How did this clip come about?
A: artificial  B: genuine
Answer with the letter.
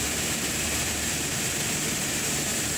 A